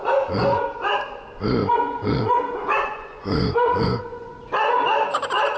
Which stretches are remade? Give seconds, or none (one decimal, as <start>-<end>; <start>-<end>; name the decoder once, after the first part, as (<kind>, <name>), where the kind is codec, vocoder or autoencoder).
0.0-0.6 (vocoder, Vocos); 1.6-4.3